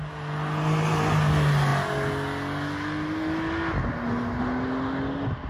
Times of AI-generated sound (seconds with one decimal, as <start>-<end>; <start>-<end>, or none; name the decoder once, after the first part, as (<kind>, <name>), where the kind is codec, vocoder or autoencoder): none